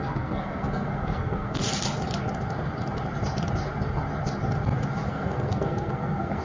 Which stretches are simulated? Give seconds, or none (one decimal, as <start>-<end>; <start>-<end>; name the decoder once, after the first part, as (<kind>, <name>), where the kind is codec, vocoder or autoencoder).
0.0-1.6 (codec, SNAC); 5.1-6.4